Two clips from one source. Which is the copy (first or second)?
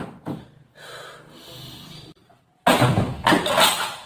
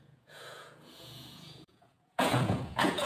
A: second